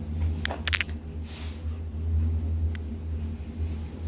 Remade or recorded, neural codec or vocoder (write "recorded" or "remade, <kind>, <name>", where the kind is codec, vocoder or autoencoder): recorded